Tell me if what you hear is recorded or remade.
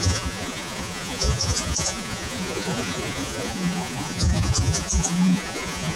remade